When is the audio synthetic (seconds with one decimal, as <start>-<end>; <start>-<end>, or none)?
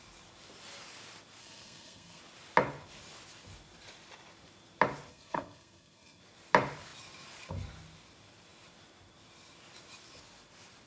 1.4-2.2; 5.1-6.2